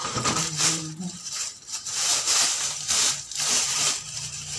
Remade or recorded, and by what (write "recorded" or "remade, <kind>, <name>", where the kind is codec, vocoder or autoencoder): remade, vocoder, BigVGAN v2